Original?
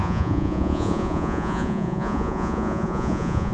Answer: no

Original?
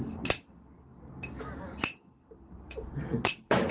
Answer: yes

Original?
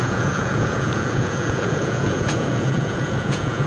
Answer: no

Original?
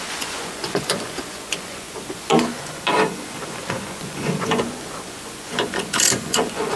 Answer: no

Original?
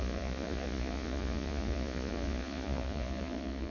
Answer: no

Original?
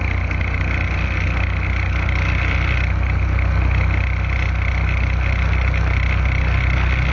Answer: yes